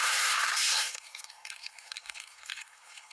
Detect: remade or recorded remade